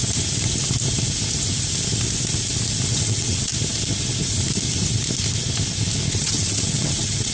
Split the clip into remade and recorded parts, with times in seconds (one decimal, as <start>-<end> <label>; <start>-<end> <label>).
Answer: 0.0-2.9 recorded; 2.9-3.5 remade; 3.5-6.1 recorded; 6.1-7.3 remade